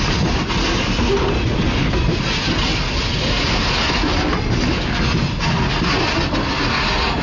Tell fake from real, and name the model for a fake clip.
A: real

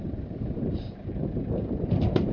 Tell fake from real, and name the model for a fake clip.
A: fake, vocoder, BigVGAN v2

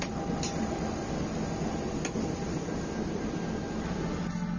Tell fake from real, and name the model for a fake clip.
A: real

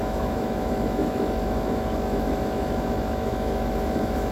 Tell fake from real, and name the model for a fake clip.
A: fake, autoencoder, DAC-VAE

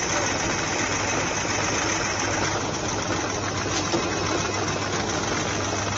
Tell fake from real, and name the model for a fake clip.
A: real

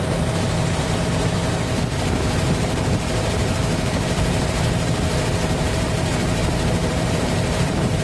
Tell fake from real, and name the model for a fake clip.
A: fake, vocoder, BigVGAN v2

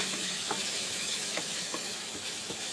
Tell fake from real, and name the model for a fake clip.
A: fake, autoencoder, DAC-VAE